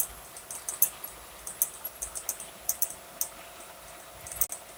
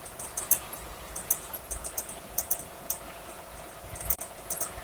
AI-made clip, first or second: second